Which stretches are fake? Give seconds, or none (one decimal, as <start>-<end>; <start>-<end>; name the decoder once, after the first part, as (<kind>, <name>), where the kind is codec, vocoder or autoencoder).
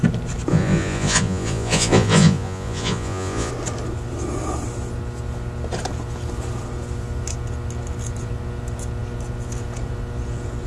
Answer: 0.5-3.5 (vocoder, Vocos)